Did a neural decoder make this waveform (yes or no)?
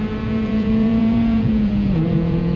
yes